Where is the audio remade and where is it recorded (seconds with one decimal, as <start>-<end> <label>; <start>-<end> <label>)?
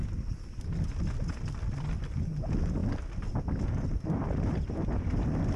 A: 0.0-0.6 remade; 0.6-5.6 recorded